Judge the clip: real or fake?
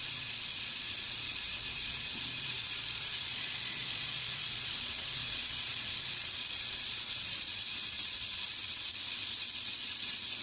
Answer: fake